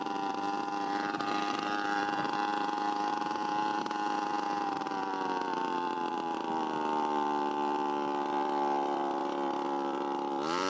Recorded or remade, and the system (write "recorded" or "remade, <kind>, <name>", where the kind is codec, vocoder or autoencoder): remade, vocoder, BigVGAN v2